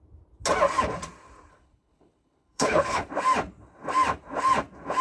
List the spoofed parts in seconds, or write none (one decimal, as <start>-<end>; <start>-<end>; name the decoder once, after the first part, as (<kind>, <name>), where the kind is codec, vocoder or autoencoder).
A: 1.5-3.1 (codec, HILCodec)